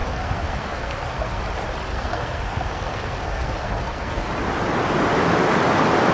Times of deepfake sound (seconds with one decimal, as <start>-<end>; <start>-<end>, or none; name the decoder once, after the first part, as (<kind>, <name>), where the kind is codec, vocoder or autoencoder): 0.0-1.4 (codec, SNAC); 1.9-4.3